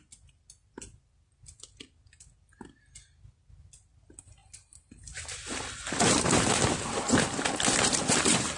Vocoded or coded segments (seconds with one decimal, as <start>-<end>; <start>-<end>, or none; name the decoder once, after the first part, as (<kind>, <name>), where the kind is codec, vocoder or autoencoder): none